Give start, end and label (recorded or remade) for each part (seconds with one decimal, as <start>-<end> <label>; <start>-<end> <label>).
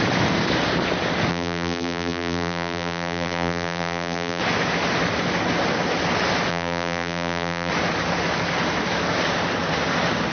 0.0-1.3 recorded; 1.3-4.4 remade; 4.4-6.5 recorded; 6.5-7.7 remade; 7.7-10.3 recorded